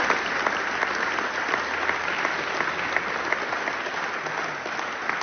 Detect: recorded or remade recorded